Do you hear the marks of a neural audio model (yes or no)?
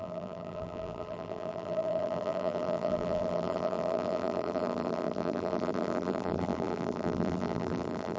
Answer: yes